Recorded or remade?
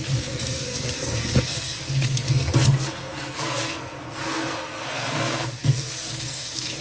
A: remade